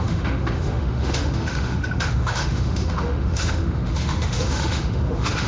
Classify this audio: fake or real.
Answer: fake